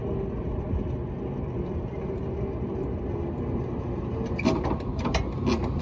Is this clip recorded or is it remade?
recorded